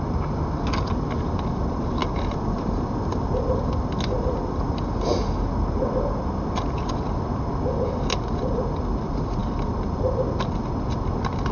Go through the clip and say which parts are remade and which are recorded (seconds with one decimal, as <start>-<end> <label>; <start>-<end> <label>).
0.0-11.5 recorded